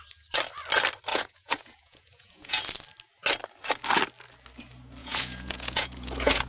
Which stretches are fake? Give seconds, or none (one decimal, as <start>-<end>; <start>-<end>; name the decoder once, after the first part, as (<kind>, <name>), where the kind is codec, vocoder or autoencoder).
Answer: 1.1-2.6 (vocoder, Vocos); 5.0-6.5